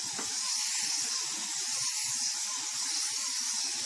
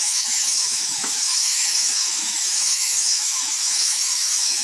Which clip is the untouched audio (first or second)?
first